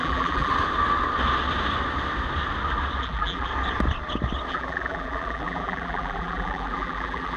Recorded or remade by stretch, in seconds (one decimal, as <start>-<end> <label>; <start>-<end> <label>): 0.0-0.5 remade; 0.5-3.0 recorded; 3.0-3.5 remade; 3.5-4.5 recorded; 4.5-7.4 remade